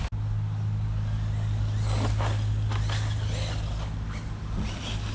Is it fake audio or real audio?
real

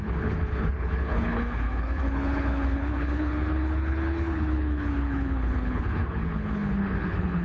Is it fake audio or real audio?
fake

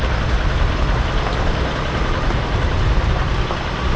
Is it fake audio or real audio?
real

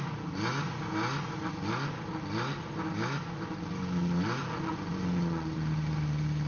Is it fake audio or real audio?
real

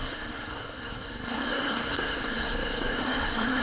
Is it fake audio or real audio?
fake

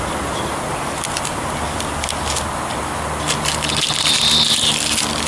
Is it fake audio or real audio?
real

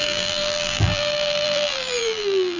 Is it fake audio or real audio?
fake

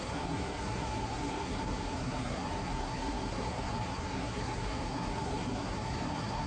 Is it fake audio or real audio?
fake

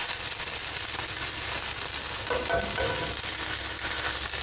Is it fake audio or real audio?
real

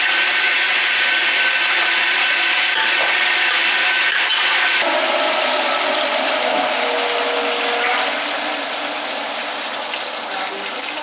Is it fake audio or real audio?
real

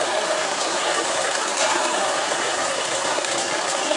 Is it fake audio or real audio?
fake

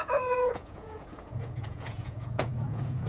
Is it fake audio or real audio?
fake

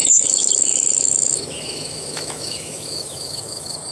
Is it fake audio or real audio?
fake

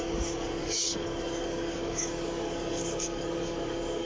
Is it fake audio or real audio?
fake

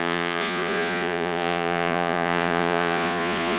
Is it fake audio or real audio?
fake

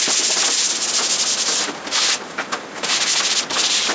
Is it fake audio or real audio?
real